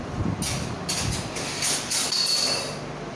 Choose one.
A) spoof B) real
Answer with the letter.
B